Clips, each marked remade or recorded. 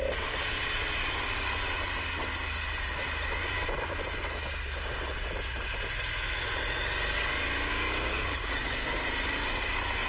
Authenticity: recorded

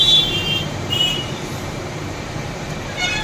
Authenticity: remade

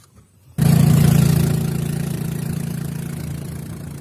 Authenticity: remade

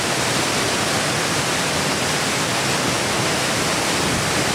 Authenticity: remade